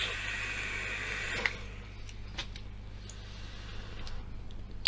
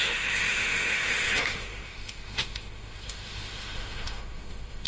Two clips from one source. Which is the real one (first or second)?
first